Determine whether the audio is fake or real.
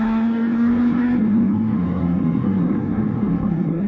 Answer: fake